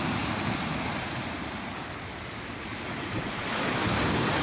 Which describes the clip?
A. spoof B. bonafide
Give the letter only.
B